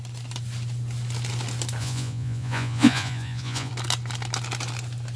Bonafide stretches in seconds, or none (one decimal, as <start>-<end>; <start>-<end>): 0.0-1.8; 3.7-5.2